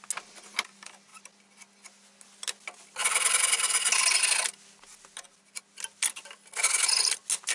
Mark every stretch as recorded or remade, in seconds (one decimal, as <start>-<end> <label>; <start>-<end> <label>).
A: 0.0-7.5 recorded